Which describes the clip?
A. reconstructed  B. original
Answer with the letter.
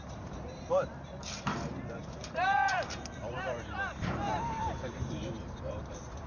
A